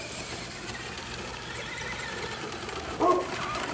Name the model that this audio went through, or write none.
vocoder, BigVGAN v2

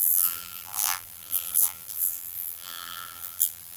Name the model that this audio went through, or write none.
vocoder, BigVGAN v2